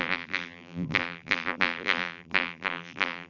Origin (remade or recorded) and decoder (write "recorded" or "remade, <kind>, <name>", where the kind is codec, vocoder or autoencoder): remade, vocoder, BigVGAN v2